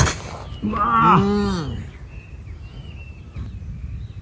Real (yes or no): yes